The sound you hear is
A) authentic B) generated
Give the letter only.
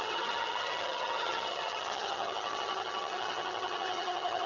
B